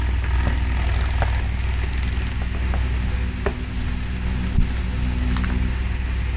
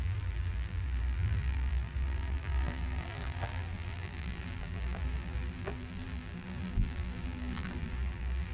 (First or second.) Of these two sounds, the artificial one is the second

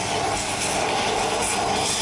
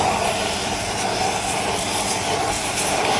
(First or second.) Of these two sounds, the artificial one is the second